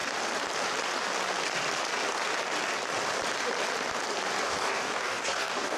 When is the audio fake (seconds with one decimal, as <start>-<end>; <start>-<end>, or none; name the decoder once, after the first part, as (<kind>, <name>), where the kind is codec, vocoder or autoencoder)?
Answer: 4.4-5.8 (codec, DAC)